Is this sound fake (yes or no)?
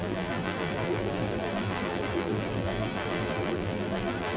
yes